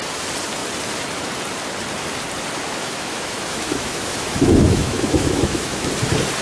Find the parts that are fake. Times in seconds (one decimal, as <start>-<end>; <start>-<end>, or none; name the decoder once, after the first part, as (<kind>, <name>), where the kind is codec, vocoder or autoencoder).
2.8-5.9 (autoencoder, DAC-VAE)